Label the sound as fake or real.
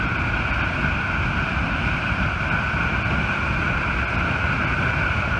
real